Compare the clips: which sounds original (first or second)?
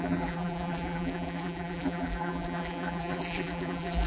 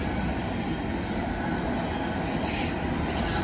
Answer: second